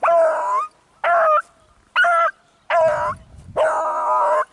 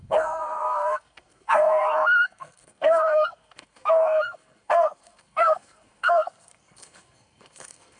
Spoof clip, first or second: second